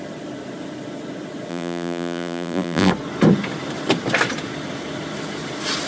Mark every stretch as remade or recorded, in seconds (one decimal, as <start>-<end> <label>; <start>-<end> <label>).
0.0-1.5 recorded; 1.5-2.9 remade; 2.9-5.9 recorded